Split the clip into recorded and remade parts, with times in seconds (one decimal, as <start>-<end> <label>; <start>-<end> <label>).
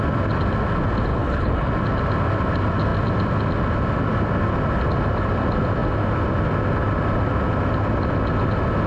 0.0-1.1 recorded; 1.1-1.7 remade; 1.7-8.9 recorded